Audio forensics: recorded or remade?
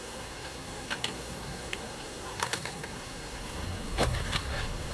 remade